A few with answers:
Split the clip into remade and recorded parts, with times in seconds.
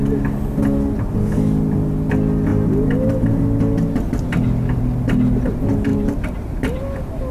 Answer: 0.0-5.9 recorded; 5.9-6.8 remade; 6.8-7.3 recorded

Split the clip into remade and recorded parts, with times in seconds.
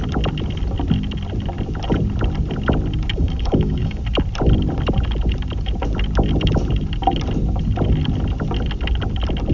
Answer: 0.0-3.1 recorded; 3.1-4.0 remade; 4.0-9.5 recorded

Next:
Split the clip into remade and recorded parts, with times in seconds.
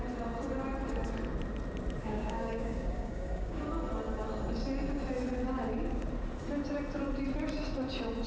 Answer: 0.0-2.0 recorded; 2.0-3.6 remade; 3.6-8.3 recorded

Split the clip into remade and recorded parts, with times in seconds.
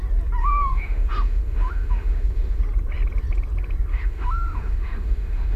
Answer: 0.0-0.4 recorded; 0.4-2.6 remade; 2.6-3.9 recorded; 3.9-5.6 remade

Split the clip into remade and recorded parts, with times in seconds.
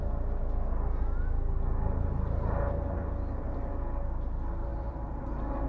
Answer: 0.0-4.7 recorded; 4.7-5.2 remade; 5.2-5.7 recorded